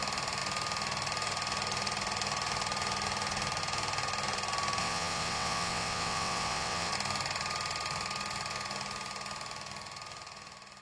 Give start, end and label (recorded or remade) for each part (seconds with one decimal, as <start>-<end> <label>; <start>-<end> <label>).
0.0-4.8 recorded; 4.8-6.9 remade; 6.9-10.8 recorded